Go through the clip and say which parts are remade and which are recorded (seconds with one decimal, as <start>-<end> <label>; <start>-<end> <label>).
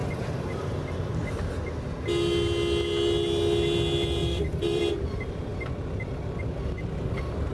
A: 0.0-0.8 remade; 0.8-4.2 recorded; 4.2-4.8 remade; 4.8-5.5 recorded; 5.5-6.4 remade; 6.4-7.5 recorded